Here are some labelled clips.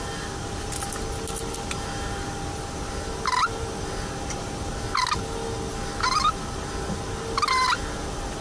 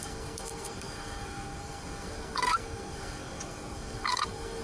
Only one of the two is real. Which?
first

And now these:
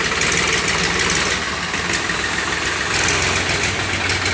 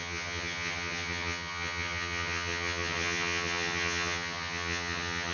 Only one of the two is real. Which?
first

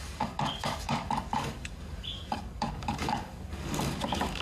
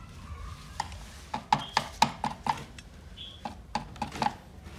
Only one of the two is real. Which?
second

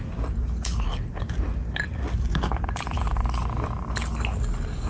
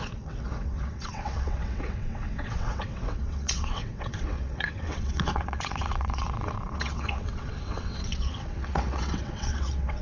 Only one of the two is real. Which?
first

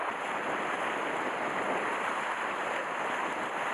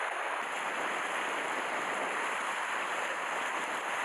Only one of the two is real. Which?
first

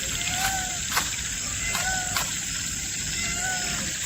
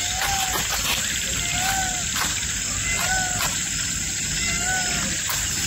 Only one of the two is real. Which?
second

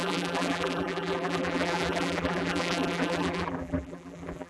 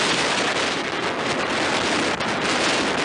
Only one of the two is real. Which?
second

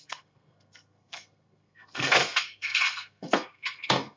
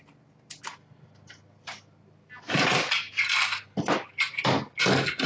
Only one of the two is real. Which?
second